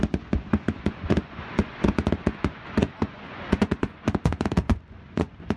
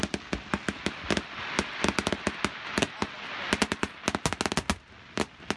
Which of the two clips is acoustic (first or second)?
second